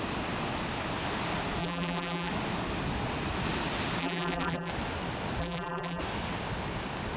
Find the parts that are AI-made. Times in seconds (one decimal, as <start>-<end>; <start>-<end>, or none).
1.6-2.3; 4.0-4.7; 5.4-6.0